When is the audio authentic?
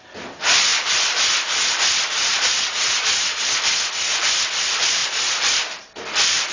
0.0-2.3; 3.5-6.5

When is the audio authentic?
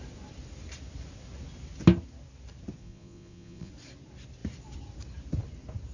0.0-2.8; 3.7-5.9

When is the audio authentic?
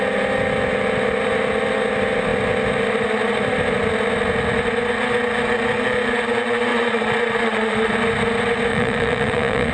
0.0-6.7; 7.9-8.7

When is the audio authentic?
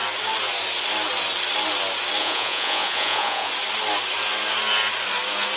0.0-2.2; 3.5-5.6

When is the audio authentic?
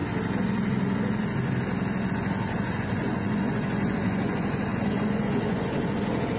0.0-2.1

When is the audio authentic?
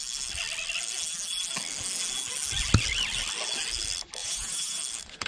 0.0-4.2; 4.8-5.3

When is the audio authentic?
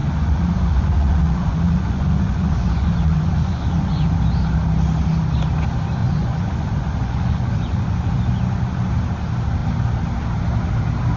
4.1-6.0; 8.2-11.2